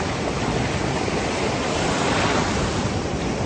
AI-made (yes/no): no